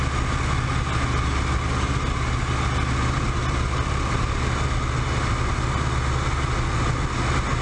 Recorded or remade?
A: recorded